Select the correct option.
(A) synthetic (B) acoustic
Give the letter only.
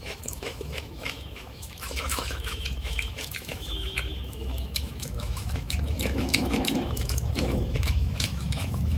A